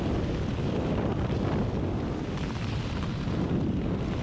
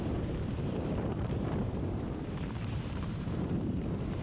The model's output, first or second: second